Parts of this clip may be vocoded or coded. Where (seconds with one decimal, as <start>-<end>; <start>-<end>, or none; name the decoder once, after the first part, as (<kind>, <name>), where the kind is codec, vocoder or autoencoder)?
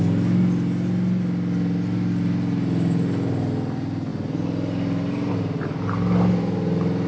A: none